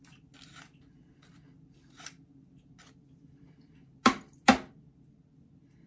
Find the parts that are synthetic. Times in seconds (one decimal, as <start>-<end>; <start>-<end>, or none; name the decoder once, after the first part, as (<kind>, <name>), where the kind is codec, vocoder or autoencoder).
none